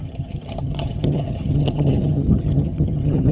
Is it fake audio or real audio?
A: fake